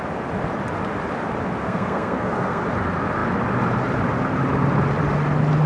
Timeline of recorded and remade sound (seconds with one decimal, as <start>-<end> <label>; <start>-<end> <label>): 0.0-1.6 recorded; 1.6-2.6 remade; 2.6-5.7 recorded